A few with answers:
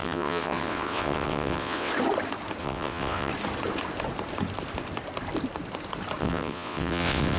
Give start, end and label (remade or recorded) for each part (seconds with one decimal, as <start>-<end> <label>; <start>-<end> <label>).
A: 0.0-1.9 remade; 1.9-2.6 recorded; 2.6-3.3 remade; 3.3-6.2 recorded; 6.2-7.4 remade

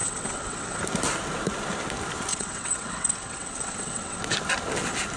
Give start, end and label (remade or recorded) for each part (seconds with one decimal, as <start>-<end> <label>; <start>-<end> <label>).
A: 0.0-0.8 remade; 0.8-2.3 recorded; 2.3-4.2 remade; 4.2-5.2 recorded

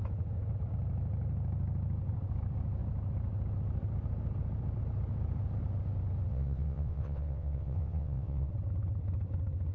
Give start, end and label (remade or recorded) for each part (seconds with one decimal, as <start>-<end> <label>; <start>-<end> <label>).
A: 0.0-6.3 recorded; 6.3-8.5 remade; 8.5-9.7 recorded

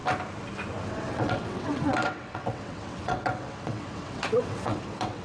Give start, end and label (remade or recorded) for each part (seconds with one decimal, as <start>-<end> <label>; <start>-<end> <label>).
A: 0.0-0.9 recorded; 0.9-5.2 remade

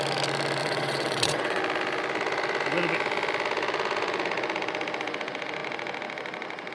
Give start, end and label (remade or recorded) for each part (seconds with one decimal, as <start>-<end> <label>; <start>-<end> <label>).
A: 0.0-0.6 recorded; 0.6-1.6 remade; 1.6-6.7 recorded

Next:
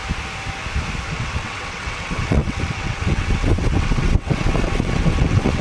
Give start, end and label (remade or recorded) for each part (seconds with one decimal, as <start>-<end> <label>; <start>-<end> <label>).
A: 0.0-1.1 recorded; 1.1-5.6 remade

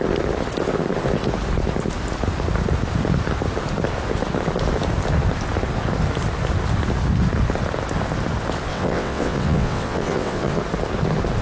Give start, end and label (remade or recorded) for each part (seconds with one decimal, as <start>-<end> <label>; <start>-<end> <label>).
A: 0.0-8.7 recorded; 8.7-10.6 remade; 10.6-11.4 recorded